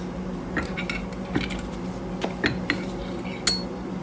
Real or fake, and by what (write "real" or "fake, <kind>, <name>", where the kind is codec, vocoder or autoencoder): real